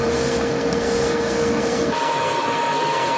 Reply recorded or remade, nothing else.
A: remade